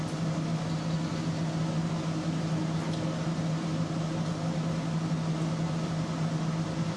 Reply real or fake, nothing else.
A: real